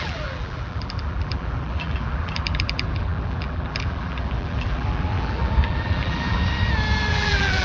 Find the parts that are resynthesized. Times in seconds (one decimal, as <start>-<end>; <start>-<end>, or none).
0.0-6.4; 7.1-7.6